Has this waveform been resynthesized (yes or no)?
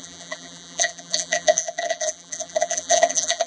yes